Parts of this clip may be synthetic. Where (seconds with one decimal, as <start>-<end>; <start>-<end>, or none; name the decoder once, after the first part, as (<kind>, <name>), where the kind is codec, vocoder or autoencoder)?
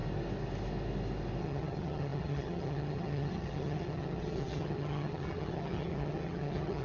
1.4-6.8 (vocoder, HiFi-GAN)